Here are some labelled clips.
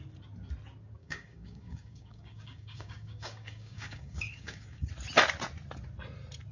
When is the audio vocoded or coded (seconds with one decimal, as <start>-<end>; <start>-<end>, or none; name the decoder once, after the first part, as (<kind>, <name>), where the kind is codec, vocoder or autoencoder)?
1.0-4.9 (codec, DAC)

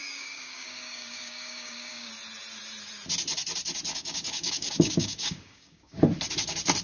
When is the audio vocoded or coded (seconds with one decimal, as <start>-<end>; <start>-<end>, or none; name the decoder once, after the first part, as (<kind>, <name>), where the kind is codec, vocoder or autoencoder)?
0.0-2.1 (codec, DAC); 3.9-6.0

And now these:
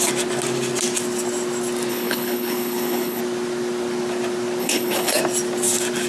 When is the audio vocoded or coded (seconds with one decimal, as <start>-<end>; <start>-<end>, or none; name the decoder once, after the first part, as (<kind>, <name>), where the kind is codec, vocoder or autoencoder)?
1.9-3.2 (codec, HILCodec); 4.6-5.2

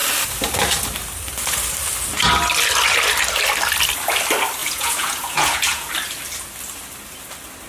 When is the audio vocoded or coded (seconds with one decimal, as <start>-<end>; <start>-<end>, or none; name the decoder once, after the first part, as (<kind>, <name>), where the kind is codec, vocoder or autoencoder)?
4.6-5.9 (vocoder, Vocos)

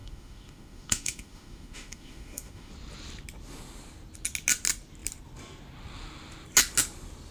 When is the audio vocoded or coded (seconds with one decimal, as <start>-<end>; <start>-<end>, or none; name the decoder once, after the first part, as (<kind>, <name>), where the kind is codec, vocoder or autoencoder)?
0.0-2.7 (autoencoder, DAC-VAE)

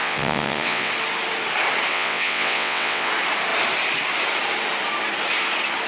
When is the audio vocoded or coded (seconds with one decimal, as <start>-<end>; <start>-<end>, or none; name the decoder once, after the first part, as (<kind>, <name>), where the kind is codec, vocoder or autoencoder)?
0.0-0.9 (vocoder, WaveNeXt); 1.9-3.1

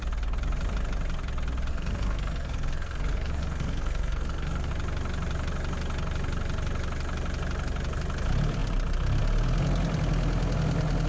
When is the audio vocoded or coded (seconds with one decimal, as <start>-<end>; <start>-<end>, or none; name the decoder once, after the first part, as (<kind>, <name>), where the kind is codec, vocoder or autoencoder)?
1.7-4.7 (codec, SNAC)